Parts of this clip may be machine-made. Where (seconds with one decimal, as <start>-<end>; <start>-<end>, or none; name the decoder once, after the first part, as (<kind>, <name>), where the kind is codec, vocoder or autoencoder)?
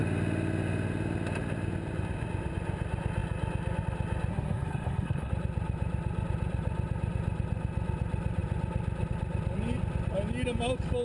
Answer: 4.3-5.3 (codec, SNAC)